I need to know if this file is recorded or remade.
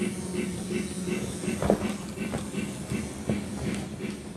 recorded